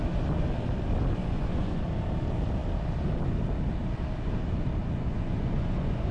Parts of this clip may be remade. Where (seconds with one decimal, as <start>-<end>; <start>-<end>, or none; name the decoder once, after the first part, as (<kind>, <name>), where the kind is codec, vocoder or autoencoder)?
1.2-1.8 (vocoder, Vocos); 4.8-6.1